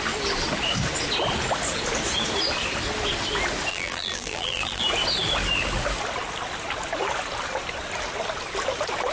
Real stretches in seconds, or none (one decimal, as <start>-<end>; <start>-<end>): 0.0-3.7; 4.8-9.1